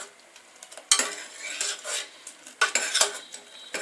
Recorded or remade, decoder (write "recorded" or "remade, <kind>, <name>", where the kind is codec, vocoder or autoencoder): recorded